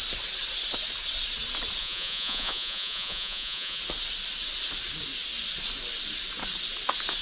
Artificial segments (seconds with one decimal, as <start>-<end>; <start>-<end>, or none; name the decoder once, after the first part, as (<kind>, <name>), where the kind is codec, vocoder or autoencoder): 1.8-3.8 (vocoder, Vocos)